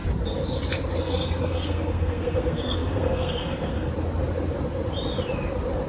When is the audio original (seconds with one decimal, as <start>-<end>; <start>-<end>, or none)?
0.0-1.0; 3.9-5.9